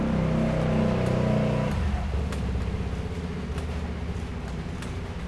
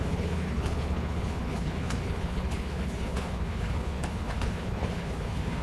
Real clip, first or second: first